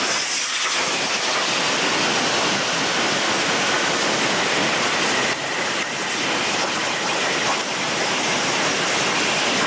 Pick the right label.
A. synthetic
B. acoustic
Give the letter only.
B